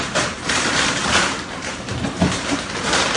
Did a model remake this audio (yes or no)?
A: yes